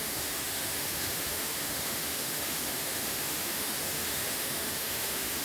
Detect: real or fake fake